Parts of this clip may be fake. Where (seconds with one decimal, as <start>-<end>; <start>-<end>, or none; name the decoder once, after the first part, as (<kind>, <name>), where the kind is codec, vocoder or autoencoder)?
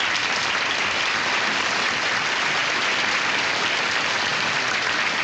none